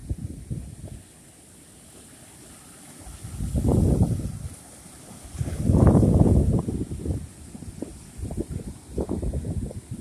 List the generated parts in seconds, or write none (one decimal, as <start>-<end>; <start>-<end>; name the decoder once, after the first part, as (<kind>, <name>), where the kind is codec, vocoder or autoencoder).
3.7-8.7 (vocoder, BigVGAN v2)